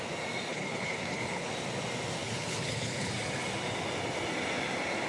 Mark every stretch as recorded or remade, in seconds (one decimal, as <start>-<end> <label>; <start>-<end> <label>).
0.0-0.5 recorded; 0.5-1.5 remade; 1.5-2.2 recorded; 2.2-3.1 remade; 3.1-5.1 recorded